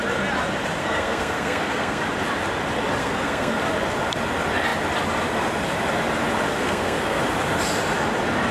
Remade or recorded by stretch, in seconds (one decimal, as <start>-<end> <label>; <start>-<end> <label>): 0.0-0.8 recorded; 0.8-2.0 remade; 2.0-3.0 recorded; 3.0-3.6 remade; 3.6-6.5 recorded; 6.5-7.2 remade; 7.2-8.5 recorded